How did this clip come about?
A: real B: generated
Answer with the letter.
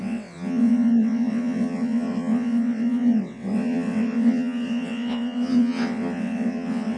B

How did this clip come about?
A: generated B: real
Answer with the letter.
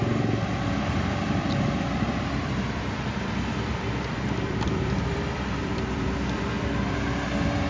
A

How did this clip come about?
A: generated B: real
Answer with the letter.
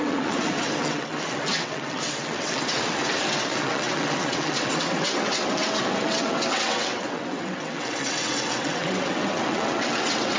A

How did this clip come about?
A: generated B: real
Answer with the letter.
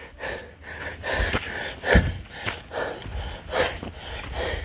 B